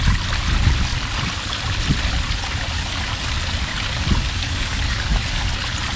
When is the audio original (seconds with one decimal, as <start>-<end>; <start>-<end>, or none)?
0.0-3.7; 5.5-6.0